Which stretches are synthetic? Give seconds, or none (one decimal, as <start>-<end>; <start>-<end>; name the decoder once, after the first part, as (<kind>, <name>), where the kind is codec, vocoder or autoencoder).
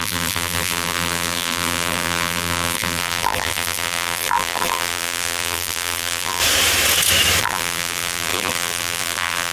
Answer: 0.0-6.4 (vocoder, BigVGAN v2); 7.4-9.5